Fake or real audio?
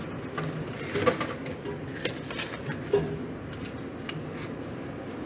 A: real